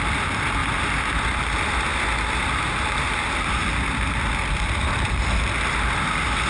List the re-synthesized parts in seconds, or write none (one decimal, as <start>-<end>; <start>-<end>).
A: none